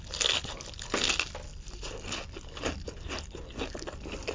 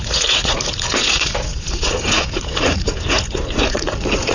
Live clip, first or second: first